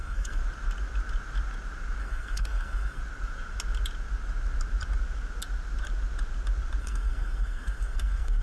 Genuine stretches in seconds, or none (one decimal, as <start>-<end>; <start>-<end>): 0.4-2.0; 3.0-6.8

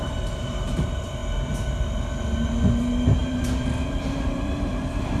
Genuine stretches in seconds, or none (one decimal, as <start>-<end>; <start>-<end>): 1.2-2.8

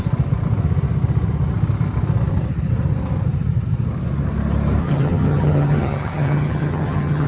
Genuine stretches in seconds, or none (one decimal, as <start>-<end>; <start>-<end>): 0.0-4.8

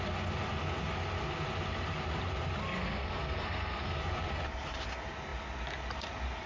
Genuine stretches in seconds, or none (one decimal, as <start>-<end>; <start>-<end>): 0.0-2.8; 4.0-6.5